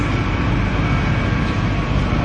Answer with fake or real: fake